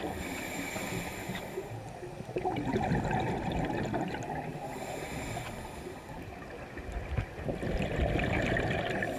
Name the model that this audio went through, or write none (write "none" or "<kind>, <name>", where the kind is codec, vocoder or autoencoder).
none